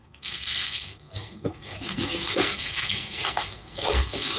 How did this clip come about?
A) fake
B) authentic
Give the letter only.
A